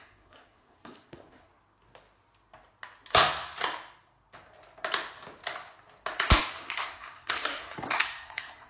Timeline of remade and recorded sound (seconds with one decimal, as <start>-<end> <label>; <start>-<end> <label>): 0.0-1.5 remade; 1.5-6.5 recorded; 6.5-8.7 remade